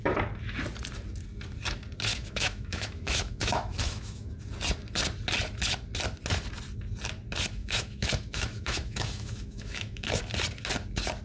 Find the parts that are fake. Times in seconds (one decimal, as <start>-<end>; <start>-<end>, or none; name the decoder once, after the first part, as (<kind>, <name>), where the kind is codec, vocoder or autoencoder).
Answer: 2.1-4.3 (autoencoder, DAC-VAE); 7.6-10.2